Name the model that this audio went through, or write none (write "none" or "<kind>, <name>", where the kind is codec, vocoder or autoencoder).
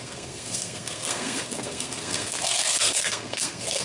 codec, SNAC